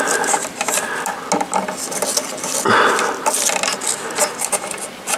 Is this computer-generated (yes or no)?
no